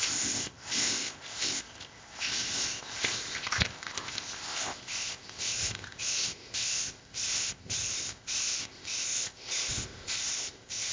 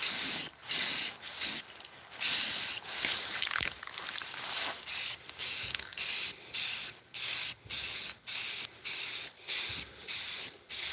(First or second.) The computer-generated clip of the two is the first